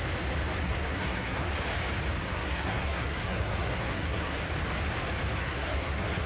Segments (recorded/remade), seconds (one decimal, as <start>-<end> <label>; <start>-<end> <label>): 0.0-0.6 recorded; 0.6-1.5 remade; 1.5-2.2 recorded; 2.2-4.4 remade; 4.4-5.4 recorded; 5.4-6.3 remade